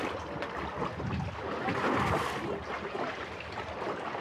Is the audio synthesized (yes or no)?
no